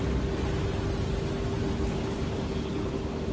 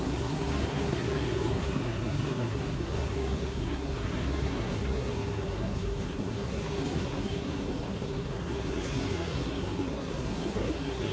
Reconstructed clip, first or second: second